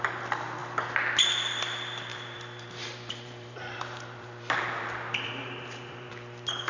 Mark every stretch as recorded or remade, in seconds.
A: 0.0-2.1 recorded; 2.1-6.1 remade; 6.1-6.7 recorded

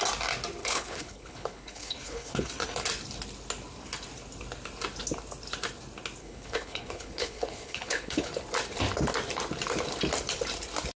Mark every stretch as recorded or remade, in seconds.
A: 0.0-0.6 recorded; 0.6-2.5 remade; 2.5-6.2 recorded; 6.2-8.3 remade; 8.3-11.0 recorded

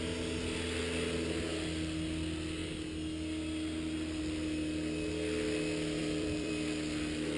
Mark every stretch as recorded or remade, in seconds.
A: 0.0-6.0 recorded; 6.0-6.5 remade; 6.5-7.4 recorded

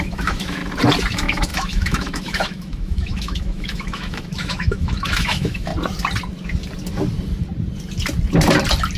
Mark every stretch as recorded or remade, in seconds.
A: 0.0-0.6 remade; 0.6-1.1 recorded; 1.1-5.7 remade; 5.7-9.0 recorded

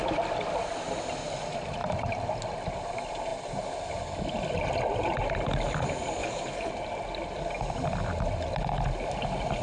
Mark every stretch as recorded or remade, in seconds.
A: 0.0-6.2 recorded; 6.2-6.7 remade; 6.7-9.6 recorded

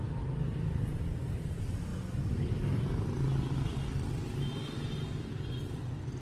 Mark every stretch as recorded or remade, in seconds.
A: 0.0-6.2 recorded